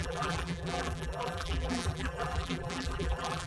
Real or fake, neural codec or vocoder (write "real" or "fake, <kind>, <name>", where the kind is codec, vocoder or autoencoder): fake, vocoder, BigVGAN v2